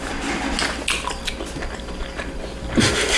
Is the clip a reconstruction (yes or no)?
no